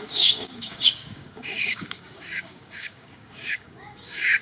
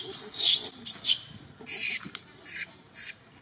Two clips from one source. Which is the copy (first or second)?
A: first